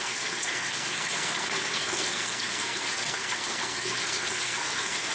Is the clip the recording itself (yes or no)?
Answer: no